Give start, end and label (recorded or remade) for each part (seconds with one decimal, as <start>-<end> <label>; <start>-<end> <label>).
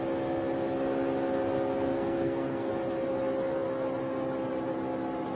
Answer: 0.0-1.9 recorded; 1.9-2.7 remade; 2.7-5.3 recorded